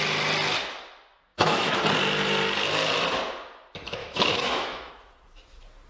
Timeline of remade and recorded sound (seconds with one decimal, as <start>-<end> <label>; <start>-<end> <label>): 0.0-1.3 recorded; 1.3-1.8 remade; 1.8-4.0 recorded; 4.0-4.9 remade; 4.9-5.9 recorded